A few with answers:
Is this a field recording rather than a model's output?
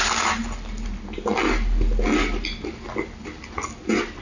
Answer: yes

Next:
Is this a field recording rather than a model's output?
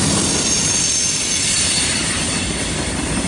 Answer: no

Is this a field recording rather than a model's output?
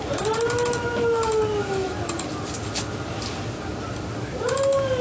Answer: yes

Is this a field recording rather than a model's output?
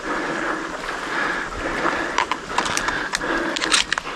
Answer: yes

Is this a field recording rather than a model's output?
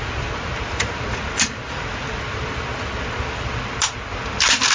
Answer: yes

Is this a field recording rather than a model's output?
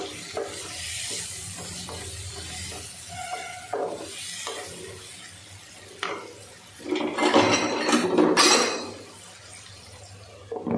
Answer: yes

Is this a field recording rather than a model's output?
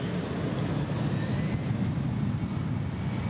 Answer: yes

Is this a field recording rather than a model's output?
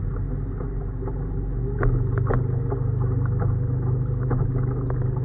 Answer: yes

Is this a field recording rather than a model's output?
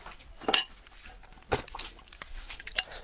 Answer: yes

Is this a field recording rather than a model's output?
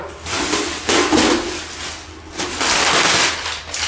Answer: yes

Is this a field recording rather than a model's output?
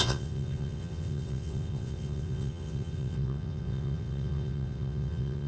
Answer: no